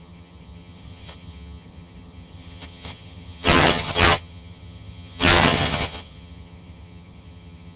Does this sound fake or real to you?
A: fake